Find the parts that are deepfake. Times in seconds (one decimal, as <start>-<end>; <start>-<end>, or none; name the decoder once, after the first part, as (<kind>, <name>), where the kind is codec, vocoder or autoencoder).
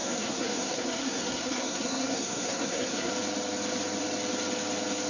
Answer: 0.0-3.1 (codec, SNAC)